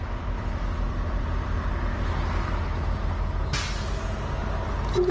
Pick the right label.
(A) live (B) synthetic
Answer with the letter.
A